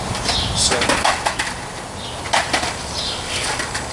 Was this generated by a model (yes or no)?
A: no